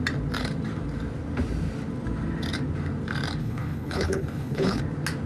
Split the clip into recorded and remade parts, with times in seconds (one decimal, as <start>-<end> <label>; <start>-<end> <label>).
0.0-3.4 recorded; 3.4-4.8 remade; 4.8-5.3 recorded